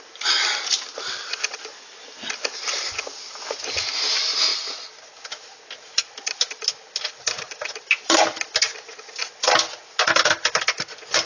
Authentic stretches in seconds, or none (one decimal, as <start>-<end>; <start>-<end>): 0.0-11.3